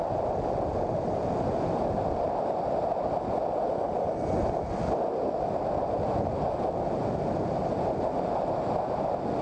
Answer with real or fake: real